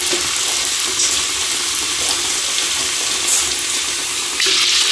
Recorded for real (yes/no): yes